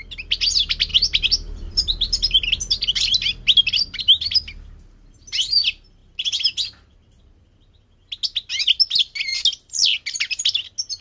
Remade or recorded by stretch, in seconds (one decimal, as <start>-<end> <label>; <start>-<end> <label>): 0.0-0.9 recorded; 0.9-4.0 remade; 4.0-11.0 recorded